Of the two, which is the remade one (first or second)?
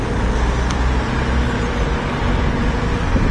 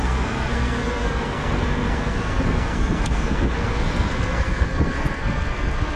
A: second